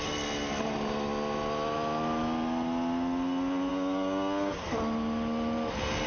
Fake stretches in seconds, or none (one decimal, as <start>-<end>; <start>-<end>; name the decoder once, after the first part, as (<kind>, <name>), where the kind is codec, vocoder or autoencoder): 3.7-4.5 (codec, DAC)